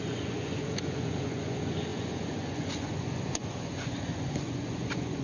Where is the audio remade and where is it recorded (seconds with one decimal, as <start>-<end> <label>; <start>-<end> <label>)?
0.0-5.2 remade